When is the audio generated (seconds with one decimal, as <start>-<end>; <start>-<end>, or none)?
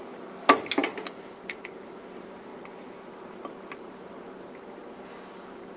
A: none